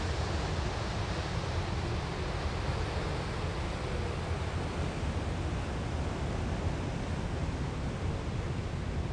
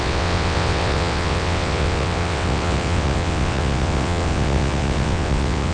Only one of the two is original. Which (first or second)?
first